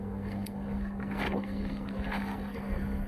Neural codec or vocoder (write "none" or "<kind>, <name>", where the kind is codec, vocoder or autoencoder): codec, SNAC